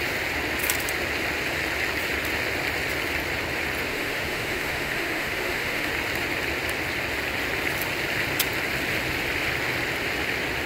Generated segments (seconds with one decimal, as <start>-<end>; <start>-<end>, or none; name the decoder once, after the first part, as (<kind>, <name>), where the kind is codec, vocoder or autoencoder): 3.9-5.9 (autoencoder, DAC-VAE)